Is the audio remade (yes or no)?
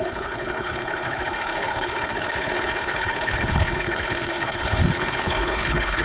yes